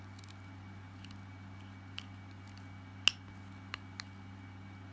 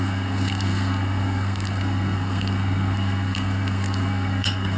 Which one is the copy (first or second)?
second